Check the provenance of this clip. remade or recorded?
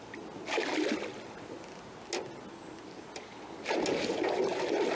recorded